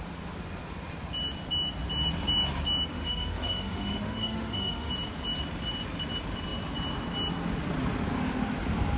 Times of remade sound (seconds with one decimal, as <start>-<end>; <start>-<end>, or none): 2.9-4.9